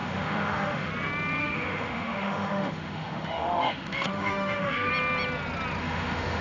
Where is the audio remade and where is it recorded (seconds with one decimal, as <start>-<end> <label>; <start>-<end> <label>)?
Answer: 0.0-0.9 remade; 0.9-1.4 recorded; 1.4-4.9 remade; 4.9-5.8 recorded; 5.8-6.4 remade